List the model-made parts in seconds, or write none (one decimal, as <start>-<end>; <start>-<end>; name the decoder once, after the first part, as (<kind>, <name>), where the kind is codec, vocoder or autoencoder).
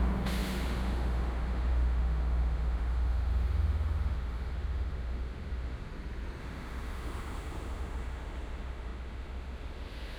0.0-5.9 (autoencoder, DAC-VAE); 6.4-10.2